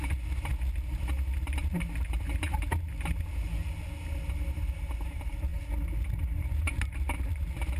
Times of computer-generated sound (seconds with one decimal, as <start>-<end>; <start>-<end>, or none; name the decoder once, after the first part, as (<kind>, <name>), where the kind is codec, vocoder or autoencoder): 0.0-0.5 (vocoder, BigVGAN v2); 1.4-2.9; 4.5-5.5; 6.2-7.8